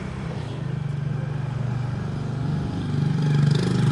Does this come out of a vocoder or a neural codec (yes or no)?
no